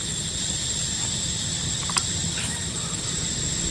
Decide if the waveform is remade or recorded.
recorded